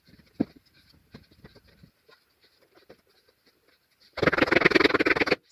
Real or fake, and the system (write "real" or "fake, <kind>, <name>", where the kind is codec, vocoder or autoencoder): real